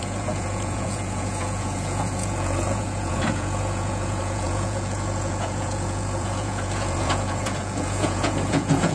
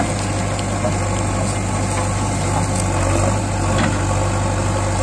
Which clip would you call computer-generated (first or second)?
first